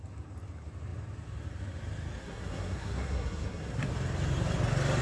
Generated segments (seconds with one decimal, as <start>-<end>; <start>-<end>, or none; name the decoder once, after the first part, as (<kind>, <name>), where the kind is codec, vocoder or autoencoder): 2.2-3.9 (codec, SNAC)